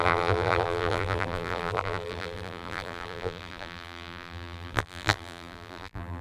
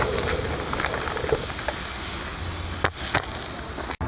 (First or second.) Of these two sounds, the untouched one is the second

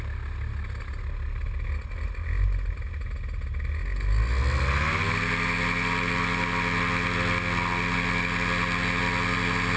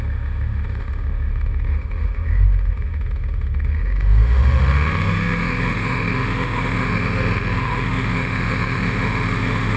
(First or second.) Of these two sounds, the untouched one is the first